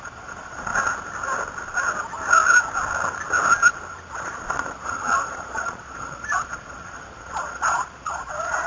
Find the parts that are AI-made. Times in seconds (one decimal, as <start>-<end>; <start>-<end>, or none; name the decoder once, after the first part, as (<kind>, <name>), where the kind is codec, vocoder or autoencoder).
0.0-0.7 (vocoder, Vocos); 4.1-8.7